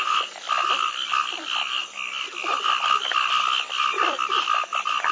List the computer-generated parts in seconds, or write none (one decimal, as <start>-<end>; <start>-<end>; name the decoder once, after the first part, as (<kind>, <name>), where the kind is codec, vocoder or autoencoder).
none